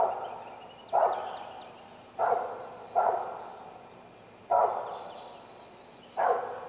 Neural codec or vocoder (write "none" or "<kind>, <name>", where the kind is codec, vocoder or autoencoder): none